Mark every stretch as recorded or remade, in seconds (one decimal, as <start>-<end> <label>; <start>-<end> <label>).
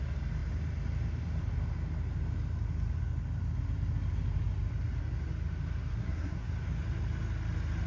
0.0-5.9 recorded; 5.9-6.5 remade; 6.5-7.9 recorded